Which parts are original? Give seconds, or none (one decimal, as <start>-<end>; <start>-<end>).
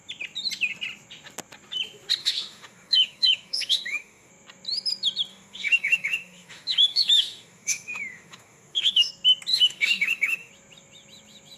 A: 0.0-2.2; 4.3-5.3; 9.1-9.5; 10.5-11.6